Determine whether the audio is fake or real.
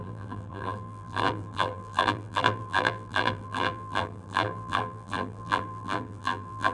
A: fake